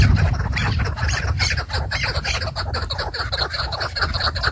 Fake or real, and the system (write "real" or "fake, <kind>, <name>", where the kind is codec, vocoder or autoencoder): real